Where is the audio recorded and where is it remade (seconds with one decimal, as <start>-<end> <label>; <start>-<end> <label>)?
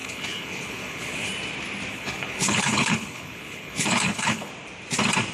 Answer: 0.0-1.3 remade; 1.3-1.9 recorded; 1.9-4.5 remade; 4.5-5.3 recorded